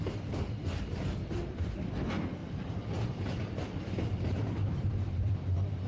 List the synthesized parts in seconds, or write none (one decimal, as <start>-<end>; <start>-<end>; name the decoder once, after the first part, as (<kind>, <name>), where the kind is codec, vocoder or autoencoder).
2.4-4.9 (vocoder, BigVGAN v2)